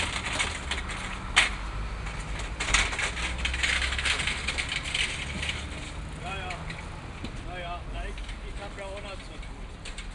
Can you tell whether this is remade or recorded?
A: recorded